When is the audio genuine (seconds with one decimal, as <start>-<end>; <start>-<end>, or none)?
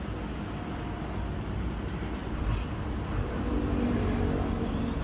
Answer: 0.0-5.0